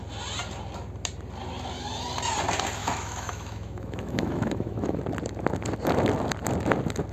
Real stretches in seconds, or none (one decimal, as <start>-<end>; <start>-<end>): 0.0-2.8; 5.0-7.1